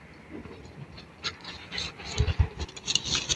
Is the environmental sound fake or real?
real